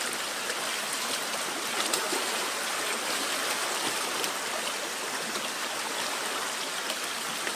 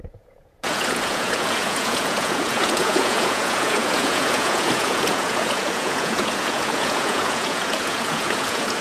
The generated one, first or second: second